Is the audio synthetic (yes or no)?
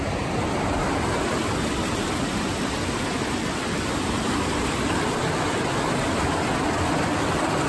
no